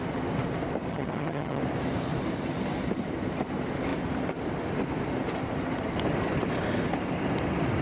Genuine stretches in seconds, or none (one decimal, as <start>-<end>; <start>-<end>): 0.0-0.9; 1.6-7.8